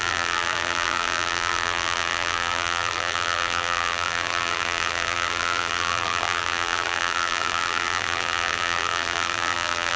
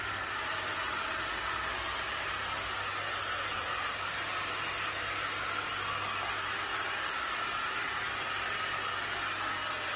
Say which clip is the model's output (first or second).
first